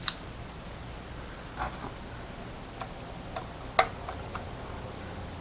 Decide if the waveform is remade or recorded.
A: recorded